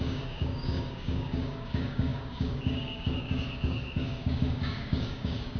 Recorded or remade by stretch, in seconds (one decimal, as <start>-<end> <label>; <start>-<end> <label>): 0.0-5.6 remade